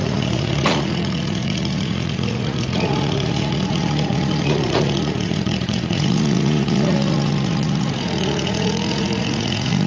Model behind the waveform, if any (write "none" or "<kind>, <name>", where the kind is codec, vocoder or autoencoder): vocoder, Vocos